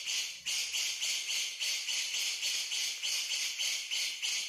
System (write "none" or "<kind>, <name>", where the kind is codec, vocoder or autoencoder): none